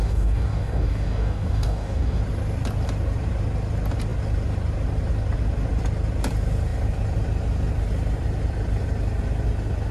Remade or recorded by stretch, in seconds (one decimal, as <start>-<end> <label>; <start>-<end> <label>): 0.0-2.2 remade; 2.2-9.9 recorded